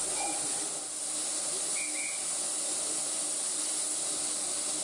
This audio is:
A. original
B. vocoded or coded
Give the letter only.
A